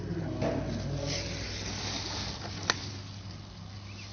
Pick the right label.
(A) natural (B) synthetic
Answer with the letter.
A